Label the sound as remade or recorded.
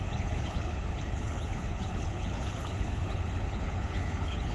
remade